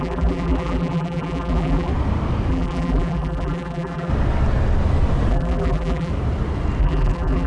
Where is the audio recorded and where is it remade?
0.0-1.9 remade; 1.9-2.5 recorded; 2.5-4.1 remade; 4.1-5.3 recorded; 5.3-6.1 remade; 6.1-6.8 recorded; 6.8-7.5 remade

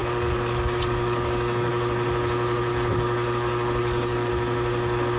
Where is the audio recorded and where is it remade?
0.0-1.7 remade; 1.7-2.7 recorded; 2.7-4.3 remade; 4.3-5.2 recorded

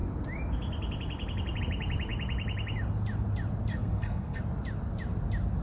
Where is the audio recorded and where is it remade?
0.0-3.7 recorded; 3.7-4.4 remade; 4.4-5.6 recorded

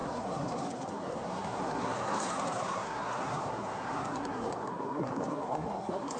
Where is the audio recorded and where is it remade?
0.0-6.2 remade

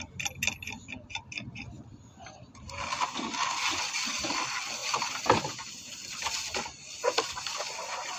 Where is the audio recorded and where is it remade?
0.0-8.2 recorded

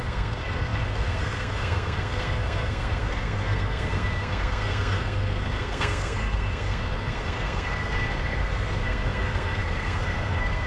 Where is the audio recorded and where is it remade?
0.0-10.7 remade

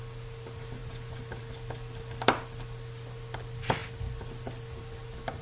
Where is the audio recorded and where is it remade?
0.0-5.4 recorded

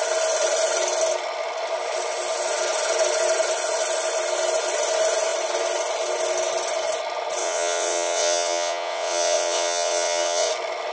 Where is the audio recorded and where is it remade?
0.0-7.4 recorded; 7.4-10.5 remade; 10.5-10.9 recorded